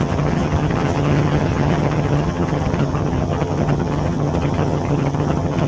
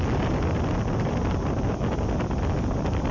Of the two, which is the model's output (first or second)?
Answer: first